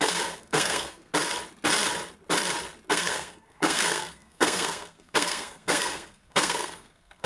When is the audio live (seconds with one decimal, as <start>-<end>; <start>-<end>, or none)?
1.1-2.9